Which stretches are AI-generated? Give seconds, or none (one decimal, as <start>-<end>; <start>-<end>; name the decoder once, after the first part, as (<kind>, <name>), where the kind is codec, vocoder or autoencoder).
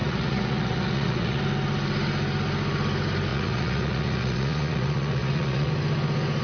0.0-1.4 (vocoder, Vocos); 3.3-5.7